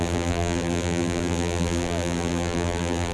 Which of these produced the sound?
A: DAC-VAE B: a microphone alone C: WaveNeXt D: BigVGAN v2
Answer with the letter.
D